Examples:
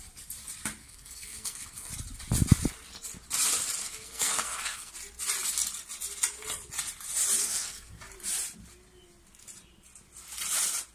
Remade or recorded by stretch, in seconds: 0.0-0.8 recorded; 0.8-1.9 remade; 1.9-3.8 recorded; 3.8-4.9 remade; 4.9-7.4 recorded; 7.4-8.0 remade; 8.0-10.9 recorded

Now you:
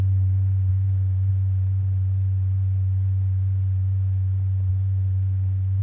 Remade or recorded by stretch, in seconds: 0.0-0.7 recorded; 0.7-1.3 remade; 1.3-4.7 recorded; 4.7-5.8 remade

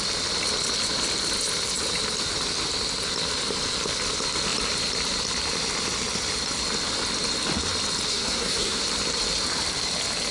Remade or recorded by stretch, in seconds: 0.0-8.1 recorded; 8.1-8.8 remade; 8.8-10.3 recorded

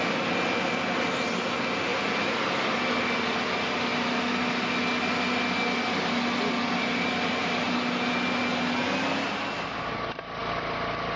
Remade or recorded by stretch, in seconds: 0.0-11.2 recorded

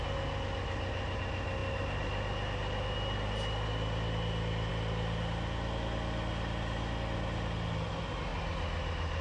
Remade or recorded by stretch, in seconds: 0.0-9.2 recorded